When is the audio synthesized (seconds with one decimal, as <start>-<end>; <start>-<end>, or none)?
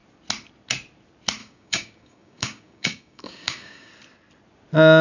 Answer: 1.4-3.9